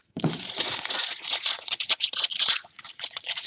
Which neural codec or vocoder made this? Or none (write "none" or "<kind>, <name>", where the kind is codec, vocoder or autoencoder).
vocoder, Vocos